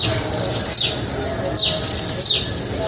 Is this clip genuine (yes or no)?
yes